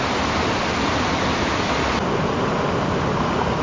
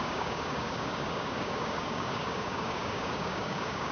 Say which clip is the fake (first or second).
second